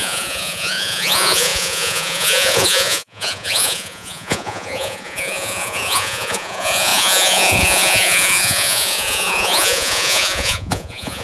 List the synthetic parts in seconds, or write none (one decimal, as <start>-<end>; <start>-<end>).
0.0-11.2